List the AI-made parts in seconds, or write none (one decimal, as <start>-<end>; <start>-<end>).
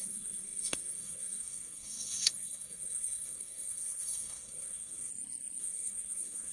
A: 0.0-5.1; 5.6-6.5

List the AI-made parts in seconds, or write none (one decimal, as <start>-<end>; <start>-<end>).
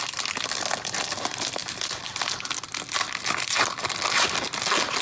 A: none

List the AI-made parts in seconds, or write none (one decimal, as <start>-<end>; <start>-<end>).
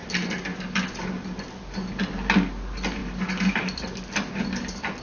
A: none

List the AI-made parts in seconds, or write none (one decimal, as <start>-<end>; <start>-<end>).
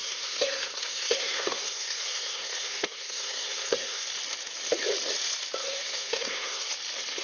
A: 0.0-4.1; 5.6-6.7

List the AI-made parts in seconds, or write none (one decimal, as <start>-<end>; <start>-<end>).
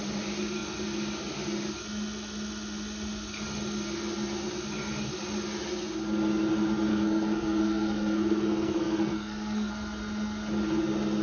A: 6.9-9.7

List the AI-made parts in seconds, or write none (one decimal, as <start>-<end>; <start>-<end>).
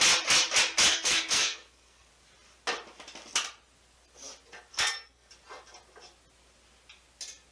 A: 0.9-2.1; 4.7-5.3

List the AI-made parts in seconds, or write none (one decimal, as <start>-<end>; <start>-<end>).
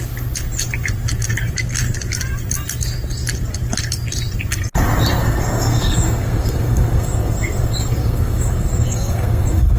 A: 5.2-9.8